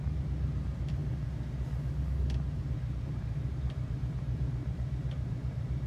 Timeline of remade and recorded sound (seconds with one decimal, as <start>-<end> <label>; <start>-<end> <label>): 0.0-1.0 remade; 1.0-2.7 recorded; 2.7-5.9 remade